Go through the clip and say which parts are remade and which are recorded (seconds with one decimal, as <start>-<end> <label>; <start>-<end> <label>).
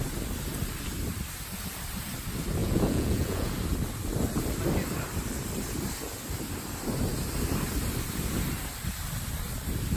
0.0-2.6 recorded; 2.6-3.5 remade; 3.5-10.0 recorded